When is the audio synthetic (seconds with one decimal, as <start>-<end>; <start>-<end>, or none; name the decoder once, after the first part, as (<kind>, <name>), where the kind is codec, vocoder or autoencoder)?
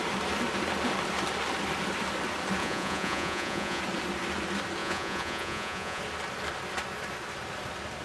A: 2.6-3.8 (vocoder, Vocos); 4.8-6.0